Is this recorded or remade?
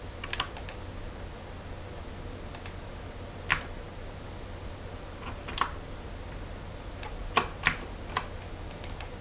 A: recorded